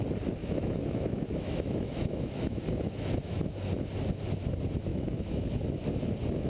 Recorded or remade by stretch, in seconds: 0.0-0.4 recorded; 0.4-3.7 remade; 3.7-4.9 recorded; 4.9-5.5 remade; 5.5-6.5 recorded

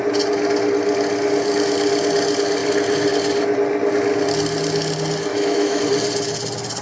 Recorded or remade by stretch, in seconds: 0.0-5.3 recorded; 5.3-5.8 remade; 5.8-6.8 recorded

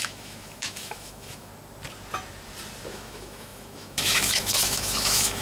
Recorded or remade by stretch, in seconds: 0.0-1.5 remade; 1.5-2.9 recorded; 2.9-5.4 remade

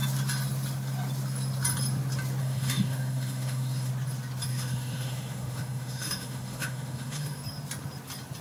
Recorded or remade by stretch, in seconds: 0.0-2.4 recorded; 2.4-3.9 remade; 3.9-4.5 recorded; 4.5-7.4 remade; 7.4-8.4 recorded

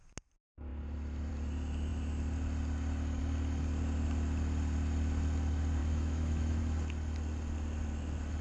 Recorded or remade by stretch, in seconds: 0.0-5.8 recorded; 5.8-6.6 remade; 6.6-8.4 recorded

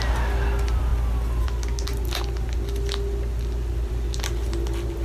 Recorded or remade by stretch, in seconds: 0.0-5.0 recorded

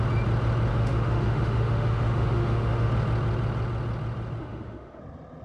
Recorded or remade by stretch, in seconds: 0.0-0.7 recorded; 0.7-2.9 remade; 2.9-4.4 recorded; 4.4-5.0 remade; 5.0-5.4 recorded